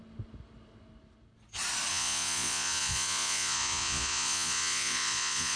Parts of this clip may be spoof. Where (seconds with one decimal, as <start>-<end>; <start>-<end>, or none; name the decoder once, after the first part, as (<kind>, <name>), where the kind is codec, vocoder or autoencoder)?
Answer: 1.9-5.6 (vocoder, Vocos)